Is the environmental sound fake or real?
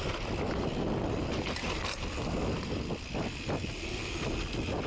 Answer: real